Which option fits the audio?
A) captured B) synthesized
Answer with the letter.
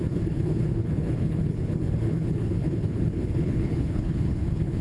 B